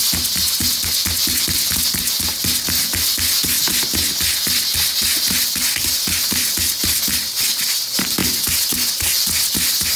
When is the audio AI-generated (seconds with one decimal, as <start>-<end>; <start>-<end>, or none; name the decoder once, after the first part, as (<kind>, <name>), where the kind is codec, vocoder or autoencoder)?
none